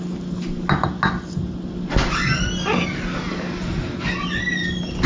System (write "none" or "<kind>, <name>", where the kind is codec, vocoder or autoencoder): none